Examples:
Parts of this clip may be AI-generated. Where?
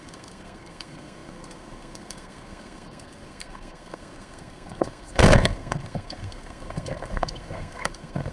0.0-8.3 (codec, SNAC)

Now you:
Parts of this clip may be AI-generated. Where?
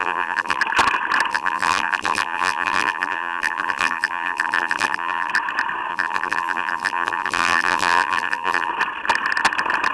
0.0-0.6 (vocoder, BigVGAN v2); 1.3-5.3; 5.9-8.7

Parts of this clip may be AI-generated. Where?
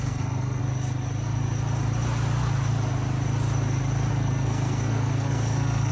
0.0-0.6 (codec, SNAC); 4.1-5.9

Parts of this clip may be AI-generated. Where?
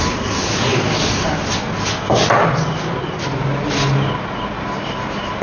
none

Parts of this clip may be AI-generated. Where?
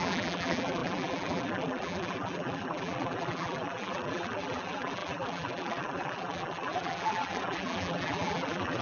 0.0-8.8 (vocoder, BigVGAN v2)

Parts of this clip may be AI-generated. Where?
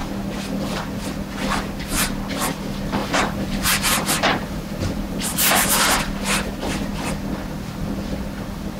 3.0-6.0 (vocoder, BigVGAN v2)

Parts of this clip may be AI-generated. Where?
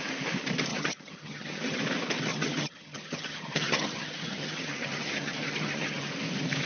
0.7-1.8 (vocoder, HiFi-GAN); 2.3-6.1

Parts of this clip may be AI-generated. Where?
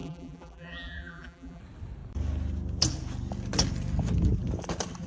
0.0-1.6 (vocoder, BigVGAN v2)